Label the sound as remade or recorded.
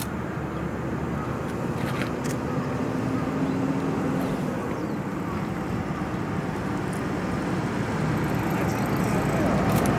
recorded